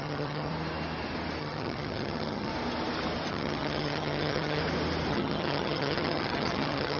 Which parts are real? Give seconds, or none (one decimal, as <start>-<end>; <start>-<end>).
0.5-1.4; 2.5-3.3; 4.6-5.1